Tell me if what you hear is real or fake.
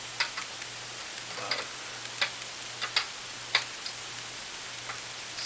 real